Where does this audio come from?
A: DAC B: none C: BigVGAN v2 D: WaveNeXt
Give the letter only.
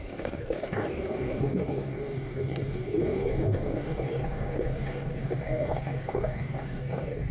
A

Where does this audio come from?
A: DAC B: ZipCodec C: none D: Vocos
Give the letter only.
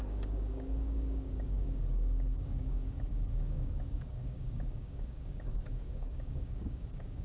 A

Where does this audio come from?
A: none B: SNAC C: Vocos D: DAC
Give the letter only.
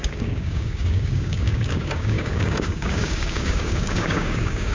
D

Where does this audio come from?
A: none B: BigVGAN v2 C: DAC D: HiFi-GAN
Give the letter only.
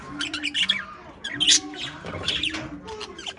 A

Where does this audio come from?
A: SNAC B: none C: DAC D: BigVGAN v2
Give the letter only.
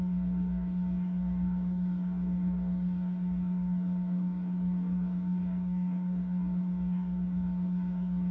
C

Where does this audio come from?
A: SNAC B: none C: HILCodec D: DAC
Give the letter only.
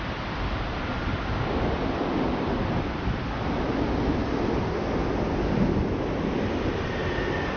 B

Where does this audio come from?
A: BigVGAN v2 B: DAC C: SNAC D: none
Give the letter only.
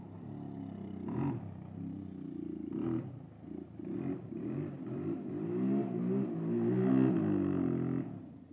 D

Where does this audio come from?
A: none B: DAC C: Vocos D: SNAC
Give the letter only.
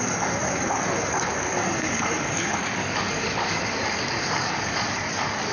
B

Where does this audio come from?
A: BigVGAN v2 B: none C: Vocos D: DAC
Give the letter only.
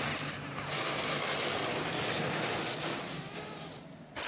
B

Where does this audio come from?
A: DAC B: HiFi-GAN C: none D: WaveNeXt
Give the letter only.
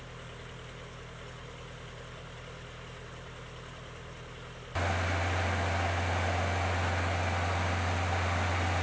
C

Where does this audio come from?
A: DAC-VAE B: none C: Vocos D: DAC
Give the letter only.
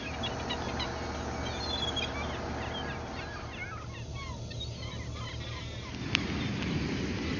B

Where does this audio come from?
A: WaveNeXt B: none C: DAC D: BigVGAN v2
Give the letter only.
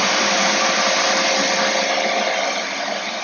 B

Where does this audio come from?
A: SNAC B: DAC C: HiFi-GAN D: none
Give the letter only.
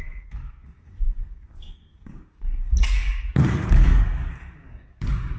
B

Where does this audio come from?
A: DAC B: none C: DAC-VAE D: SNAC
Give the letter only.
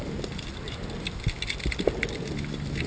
B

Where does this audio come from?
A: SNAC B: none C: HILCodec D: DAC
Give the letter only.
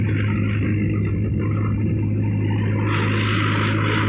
B